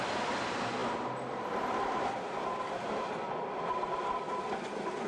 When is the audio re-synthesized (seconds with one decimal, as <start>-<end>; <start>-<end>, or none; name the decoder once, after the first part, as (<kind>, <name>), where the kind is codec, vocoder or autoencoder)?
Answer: none